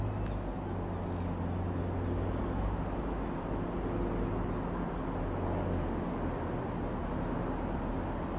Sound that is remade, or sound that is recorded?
recorded